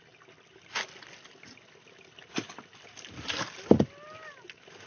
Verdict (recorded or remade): recorded